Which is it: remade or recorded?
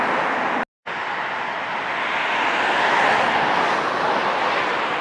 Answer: recorded